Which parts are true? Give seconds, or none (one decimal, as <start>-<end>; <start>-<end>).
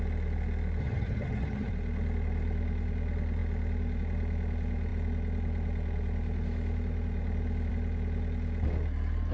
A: 0.0-0.8; 1.7-9.3